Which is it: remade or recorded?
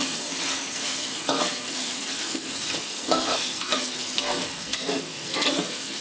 remade